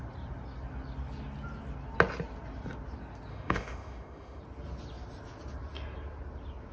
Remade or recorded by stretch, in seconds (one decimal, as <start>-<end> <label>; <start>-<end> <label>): 0.0-3.3 recorded; 3.3-4.4 remade; 4.4-6.7 recorded